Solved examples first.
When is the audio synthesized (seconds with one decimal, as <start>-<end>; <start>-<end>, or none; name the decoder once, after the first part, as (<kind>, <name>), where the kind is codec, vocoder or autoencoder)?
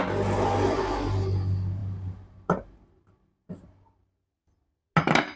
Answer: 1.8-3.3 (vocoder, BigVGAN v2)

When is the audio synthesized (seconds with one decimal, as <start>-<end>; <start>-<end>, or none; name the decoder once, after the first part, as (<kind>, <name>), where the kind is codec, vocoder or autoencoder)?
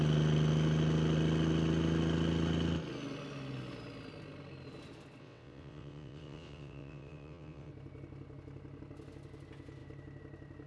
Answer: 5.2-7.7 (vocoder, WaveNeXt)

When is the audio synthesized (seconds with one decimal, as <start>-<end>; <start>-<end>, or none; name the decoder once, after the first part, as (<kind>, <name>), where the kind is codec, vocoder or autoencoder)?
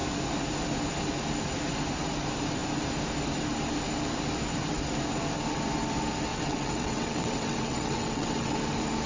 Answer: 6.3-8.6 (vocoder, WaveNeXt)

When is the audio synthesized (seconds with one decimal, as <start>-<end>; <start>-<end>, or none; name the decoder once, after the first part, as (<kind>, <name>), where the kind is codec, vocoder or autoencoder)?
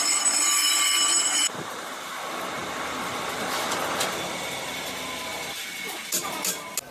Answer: 1.4-2.1 (vocoder, BigVGAN v2)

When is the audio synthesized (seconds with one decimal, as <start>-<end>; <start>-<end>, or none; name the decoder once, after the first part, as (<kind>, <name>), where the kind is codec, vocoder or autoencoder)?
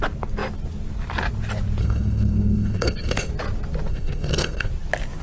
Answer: 1.8-3.3 (codec, SNAC); 3.9-4.7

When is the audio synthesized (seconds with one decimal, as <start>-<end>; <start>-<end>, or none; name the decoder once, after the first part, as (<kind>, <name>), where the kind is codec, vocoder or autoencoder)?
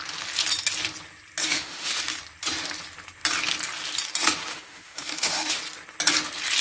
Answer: 1.4-2.0 (autoencoder, DAC-VAE); 4.5-5.6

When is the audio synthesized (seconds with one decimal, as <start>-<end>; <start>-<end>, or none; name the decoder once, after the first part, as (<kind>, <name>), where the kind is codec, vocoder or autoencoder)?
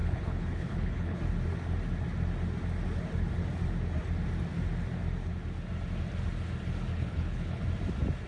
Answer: 0.0-1.2 (codec, HILCodec); 6.9-7.6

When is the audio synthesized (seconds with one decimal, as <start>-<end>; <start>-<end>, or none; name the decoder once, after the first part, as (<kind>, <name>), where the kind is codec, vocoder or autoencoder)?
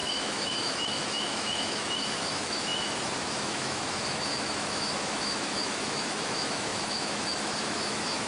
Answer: 0.0-8.3 (autoencoder, DAC-VAE)